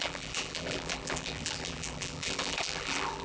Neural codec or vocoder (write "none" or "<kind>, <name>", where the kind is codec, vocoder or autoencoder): vocoder, BigVGAN v2